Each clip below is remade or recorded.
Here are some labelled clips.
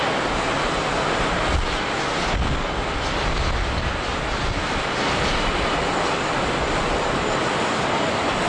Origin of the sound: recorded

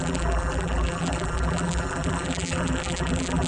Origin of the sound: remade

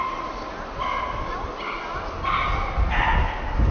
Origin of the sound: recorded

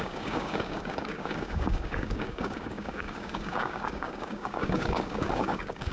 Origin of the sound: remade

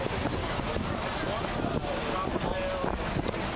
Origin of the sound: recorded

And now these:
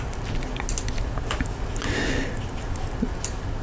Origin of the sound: recorded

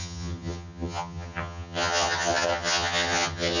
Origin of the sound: remade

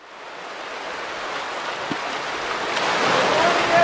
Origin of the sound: recorded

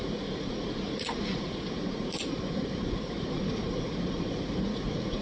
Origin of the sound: remade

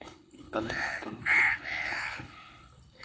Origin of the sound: remade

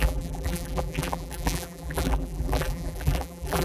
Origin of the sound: remade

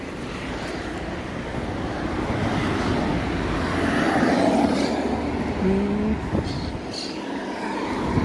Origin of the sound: recorded